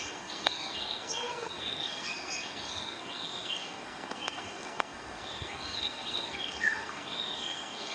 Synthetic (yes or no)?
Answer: yes